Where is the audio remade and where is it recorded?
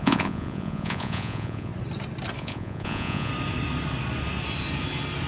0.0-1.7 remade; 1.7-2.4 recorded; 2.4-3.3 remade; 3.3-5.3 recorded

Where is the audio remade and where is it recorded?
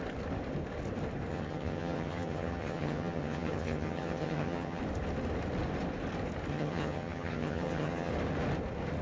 0.0-1.3 recorded; 1.3-4.8 remade; 4.8-6.5 recorded; 6.5-8.1 remade; 8.1-9.0 recorded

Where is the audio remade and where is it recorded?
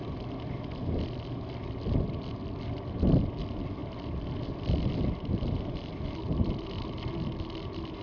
0.0-8.0 recorded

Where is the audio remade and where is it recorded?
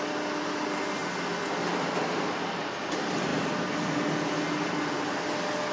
0.0-5.7 recorded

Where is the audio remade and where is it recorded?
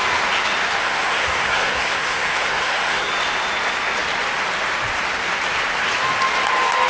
0.0-0.8 recorded; 0.8-3.1 remade; 3.1-6.9 recorded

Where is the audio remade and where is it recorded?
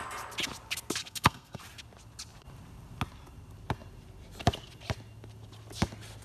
0.0-1.0 recorded; 1.0-1.6 remade; 1.6-6.2 recorded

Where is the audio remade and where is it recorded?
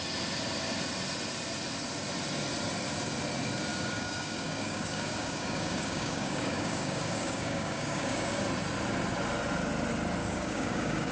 0.0-3.7 recorded; 3.7-8.4 remade; 8.4-10.2 recorded; 10.2-11.1 remade